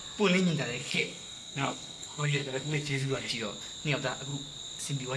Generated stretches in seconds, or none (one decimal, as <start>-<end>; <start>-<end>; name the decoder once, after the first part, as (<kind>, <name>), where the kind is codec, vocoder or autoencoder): 0.8-3.3 (codec, SNAC)